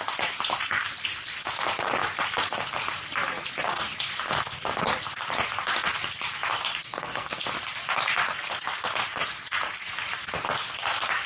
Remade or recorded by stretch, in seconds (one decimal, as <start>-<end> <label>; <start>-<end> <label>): 0.0-6.8 recorded; 6.8-7.4 remade; 7.4-11.3 recorded